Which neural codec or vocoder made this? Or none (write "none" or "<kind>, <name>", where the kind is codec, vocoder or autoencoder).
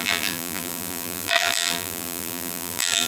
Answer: vocoder, BigVGAN v2